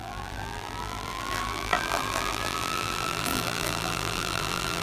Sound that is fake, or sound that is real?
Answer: fake